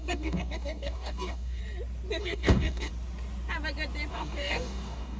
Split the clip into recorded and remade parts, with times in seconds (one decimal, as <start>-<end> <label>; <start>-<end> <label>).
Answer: 0.0-1.6 remade; 1.6-2.2 recorded; 2.2-2.9 remade; 2.9-4.1 recorded; 4.1-5.2 remade